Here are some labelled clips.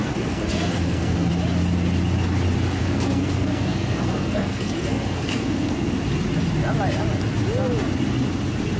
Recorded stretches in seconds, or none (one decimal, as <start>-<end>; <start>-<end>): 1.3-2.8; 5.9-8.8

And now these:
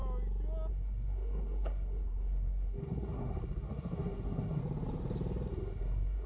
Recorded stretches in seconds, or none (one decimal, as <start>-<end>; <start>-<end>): 0.0-0.7; 4.6-5.5

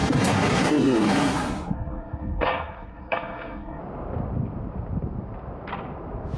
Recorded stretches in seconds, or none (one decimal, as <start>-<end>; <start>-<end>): 3.8-6.4

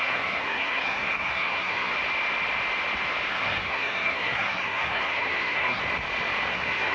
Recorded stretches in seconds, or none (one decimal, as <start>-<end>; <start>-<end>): 1.9-3.3; 5.8-6.5

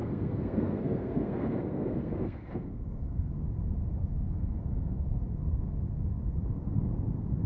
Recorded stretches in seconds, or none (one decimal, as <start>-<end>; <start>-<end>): 3.3-3.9; 5.2-7.5

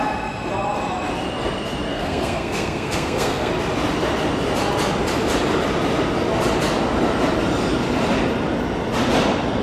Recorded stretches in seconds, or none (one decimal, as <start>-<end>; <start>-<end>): 0.0-1.9; 3.5-9.6